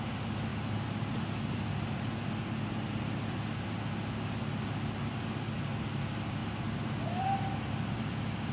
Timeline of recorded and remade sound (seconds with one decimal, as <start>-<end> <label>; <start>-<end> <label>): 0.0-8.5 recorded